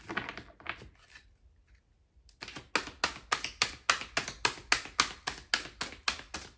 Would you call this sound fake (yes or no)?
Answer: no